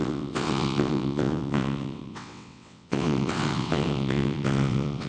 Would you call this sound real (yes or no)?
no